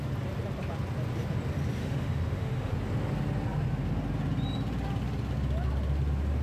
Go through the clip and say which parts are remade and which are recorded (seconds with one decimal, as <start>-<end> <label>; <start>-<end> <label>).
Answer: 0.0-1.8 recorded; 1.8-2.7 remade; 2.7-6.4 recorded